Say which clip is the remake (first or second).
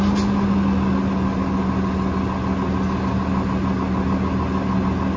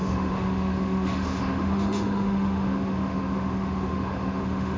second